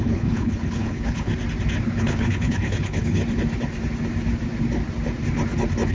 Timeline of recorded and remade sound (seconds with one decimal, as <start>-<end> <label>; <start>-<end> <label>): 0.0-1.3 remade; 1.3-2.0 recorded; 2.0-3.2 remade; 3.2-5.9 recorded